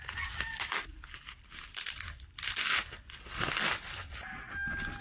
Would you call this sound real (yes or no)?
yes